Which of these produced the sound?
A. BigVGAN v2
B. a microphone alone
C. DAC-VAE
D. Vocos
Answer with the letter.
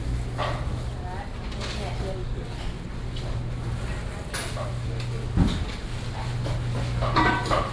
B